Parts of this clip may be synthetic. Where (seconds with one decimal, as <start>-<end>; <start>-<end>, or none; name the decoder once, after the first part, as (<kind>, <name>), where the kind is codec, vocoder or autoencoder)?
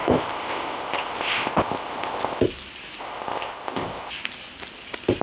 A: 0.0-2.4 (codec, ZipCodec); 3.0-4.1